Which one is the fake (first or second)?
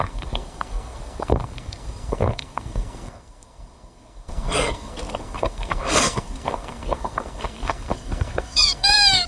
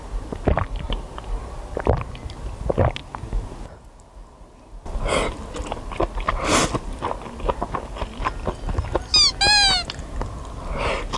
first